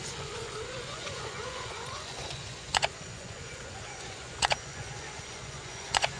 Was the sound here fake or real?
fake